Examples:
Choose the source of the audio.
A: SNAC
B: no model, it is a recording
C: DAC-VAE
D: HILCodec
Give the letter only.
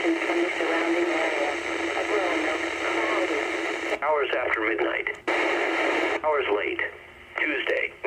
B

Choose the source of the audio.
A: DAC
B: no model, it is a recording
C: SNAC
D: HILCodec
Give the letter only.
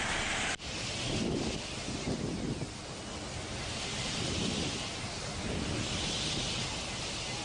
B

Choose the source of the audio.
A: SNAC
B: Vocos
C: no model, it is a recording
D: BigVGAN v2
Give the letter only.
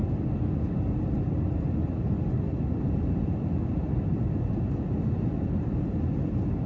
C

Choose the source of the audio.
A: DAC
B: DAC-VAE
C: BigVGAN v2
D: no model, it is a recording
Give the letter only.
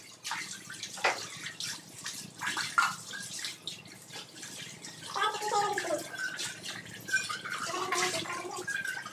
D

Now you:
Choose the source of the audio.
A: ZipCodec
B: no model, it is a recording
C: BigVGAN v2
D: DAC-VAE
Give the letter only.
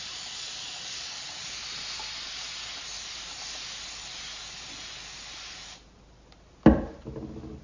B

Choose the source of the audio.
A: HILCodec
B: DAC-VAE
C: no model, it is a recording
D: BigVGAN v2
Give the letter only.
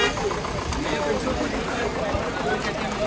C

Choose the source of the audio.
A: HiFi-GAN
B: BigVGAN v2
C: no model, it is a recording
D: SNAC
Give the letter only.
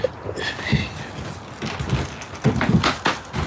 C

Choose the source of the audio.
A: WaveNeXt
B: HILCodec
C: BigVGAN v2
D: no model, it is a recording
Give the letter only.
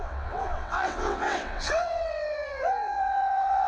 A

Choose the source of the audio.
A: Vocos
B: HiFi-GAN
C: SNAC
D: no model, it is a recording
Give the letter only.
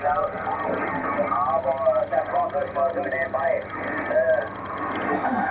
D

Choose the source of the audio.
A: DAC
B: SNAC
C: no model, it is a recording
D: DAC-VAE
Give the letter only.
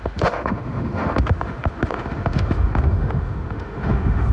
D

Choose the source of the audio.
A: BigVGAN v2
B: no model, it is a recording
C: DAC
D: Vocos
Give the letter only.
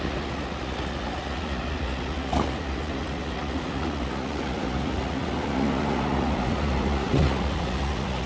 D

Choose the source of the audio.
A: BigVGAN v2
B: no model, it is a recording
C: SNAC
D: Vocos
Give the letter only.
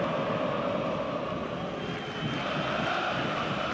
B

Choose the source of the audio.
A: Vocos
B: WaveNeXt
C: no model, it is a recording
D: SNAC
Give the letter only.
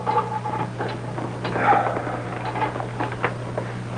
C